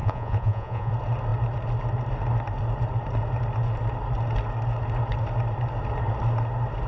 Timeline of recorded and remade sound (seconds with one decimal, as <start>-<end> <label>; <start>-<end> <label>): 0.0-0.9 remade; 0.9-6.9 recorded

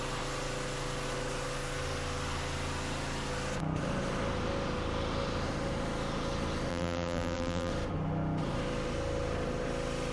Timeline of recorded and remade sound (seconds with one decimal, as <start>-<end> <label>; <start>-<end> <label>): 0.0-6.7 recorded; 6.7-7.7 remade; 7.7-10.1 recorded

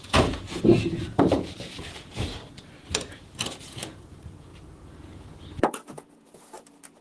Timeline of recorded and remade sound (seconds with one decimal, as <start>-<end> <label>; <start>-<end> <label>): 0.0-2.4 remade; 2.4-3.1 recorded; 3.1-7.0 remade

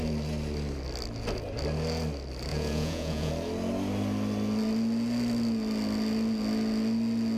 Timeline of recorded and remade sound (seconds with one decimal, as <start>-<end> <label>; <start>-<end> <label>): 0.0-2.5 recorded; 2.5-3.3 remade; 3.3-7.4 recorded